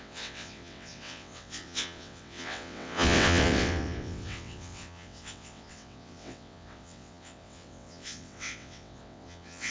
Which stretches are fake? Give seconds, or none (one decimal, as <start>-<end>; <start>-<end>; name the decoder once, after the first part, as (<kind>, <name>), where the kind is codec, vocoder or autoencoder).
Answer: 0.0-9.7 (vocoder, WaveNeXt)